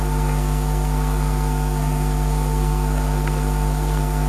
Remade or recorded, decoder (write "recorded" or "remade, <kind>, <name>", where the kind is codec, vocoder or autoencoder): remade, codec, SNAC